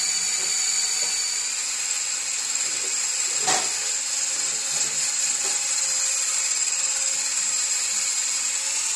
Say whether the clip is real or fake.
real